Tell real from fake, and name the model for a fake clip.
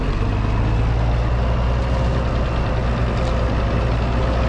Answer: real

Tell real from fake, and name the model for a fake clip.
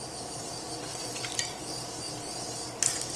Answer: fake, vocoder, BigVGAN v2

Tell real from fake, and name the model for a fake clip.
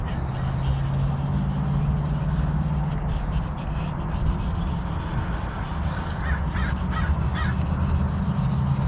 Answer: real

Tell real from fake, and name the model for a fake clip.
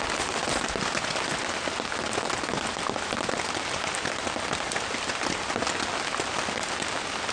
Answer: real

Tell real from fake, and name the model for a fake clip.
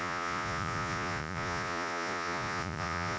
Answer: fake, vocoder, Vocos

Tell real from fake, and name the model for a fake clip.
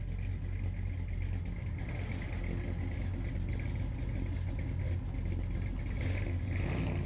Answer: real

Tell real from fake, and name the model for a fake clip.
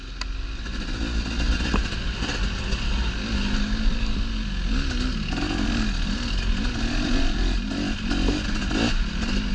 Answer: real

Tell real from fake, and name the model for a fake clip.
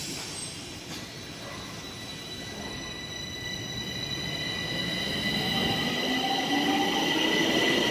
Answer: real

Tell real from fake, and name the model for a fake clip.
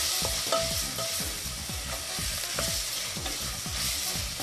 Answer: real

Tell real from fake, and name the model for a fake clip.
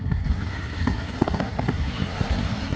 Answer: fake, codec, SNAC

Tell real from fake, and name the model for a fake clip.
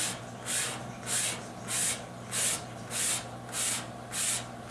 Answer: real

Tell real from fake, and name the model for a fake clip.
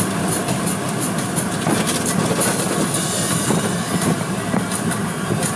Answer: real